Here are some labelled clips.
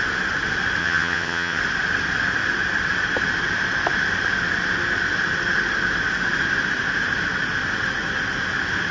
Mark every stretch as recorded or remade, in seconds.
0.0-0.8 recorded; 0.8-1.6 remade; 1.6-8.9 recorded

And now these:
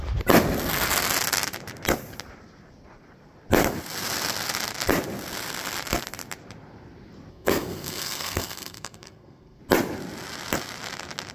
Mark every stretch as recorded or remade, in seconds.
0.0-7.3 recorded; 7.3-9.6 remade; 9.6-11.3 recorded

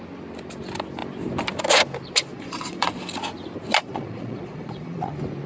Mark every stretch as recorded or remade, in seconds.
0.0-2.3 recorded; 2.3-3.1 remade; 3.1-3.8 recorded; 3.8-5.1 remade; 5.1-5.5 recorded

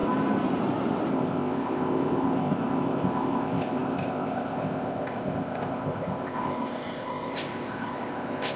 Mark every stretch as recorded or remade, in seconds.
0.0-1.1 recorded; 1.1-8.6 remade